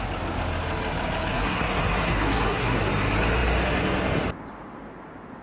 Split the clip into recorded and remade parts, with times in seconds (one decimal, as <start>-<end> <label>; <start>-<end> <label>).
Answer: 0.0-1.3 recorded; 1.3-2.9 remade; 2.9-5.4 recorded